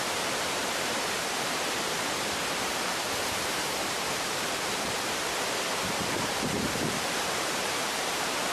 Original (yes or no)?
no